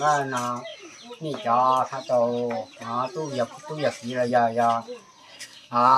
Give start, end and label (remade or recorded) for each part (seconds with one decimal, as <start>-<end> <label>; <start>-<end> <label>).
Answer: 0.0-5.2 recorded; 5.2-6.0 remade